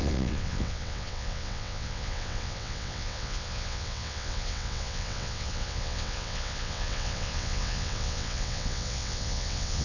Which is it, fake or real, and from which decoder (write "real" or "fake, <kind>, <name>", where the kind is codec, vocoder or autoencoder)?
fake, vocoder, WaveNeXt